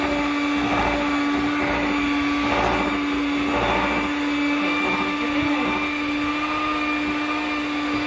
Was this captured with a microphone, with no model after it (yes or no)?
yes